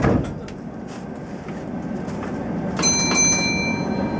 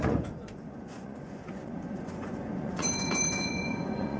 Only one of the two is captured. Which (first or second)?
first